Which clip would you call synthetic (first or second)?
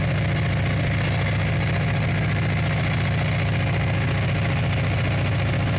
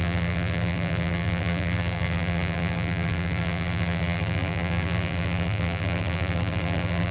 second